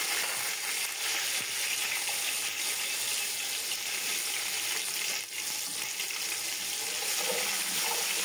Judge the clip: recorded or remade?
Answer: recorded